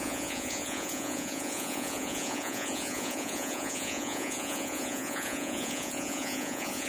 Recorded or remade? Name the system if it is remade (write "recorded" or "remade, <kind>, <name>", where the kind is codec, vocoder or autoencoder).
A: remade, vocoder, Vocos